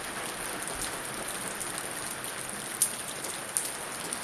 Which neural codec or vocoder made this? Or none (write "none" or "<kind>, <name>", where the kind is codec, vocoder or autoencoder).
none